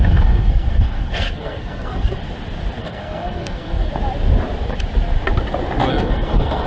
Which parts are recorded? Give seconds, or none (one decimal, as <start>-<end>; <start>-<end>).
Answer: 2.2-2.8; 3.9-5.9